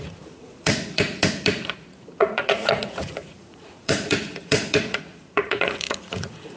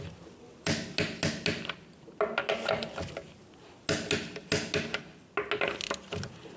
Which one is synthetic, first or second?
first